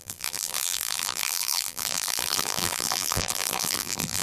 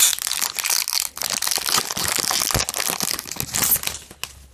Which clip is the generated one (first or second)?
first